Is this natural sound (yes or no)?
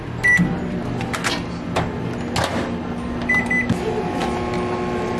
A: yes